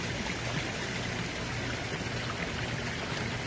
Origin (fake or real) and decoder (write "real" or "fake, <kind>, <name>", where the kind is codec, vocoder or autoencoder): real